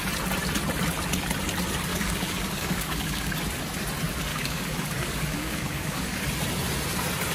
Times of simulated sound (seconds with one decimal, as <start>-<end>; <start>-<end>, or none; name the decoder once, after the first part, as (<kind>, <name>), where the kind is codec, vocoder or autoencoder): 1.9-3.3 (codec, DAC); 4.3-6.2